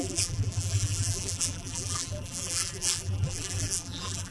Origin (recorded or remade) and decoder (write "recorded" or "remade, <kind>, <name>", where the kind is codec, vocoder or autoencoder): remade, vocoder, BigVGAN v2